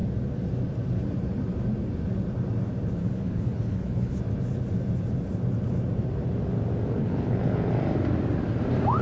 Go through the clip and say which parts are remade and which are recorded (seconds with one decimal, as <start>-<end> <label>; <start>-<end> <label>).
0.0-3.0 recorded; 3.0-4.2 remade; 4.2-7.0 recorded; 7.0-7.7 remade; 7.7-9.0 recorded

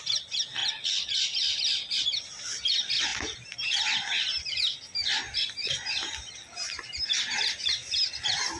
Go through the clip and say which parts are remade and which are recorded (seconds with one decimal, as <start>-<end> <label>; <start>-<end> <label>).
0.0-8.6 recorded